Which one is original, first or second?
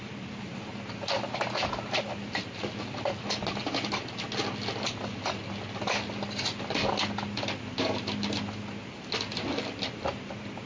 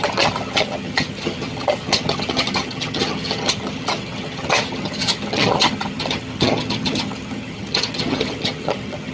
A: first